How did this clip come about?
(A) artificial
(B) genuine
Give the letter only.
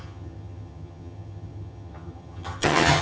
A